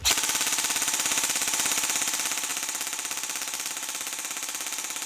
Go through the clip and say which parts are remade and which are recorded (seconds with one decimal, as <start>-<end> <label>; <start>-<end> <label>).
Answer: 0.0-5.1 recorded